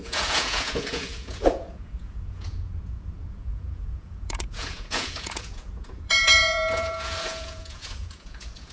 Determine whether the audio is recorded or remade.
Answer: remade